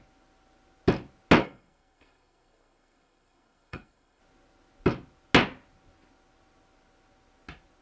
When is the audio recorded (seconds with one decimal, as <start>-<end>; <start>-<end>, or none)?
0.0-1.4; 4.2-7.8